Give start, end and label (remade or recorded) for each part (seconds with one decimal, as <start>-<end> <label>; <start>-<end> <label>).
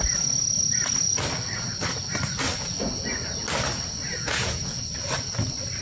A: 0.0-4.1 recorded; 4.1-4.8 remade; 4.8-5.8 recorded